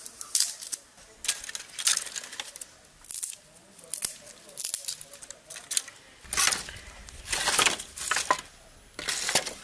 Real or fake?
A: real